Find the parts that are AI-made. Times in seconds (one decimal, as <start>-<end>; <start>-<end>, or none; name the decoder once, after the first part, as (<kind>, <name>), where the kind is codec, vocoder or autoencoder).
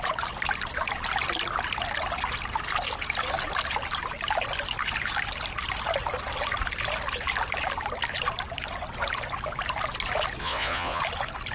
10.4-11.0 (vocoder, Vocos)